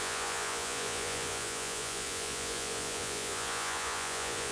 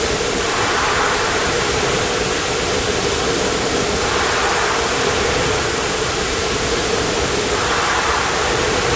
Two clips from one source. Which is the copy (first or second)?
first